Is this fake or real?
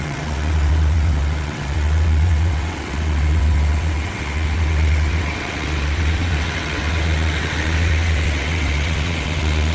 fake